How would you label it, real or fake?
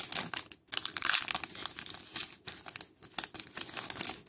real